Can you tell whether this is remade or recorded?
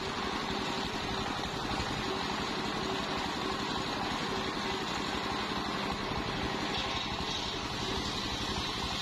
recorded